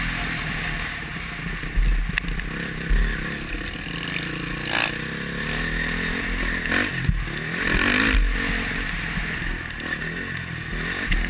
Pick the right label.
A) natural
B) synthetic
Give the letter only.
A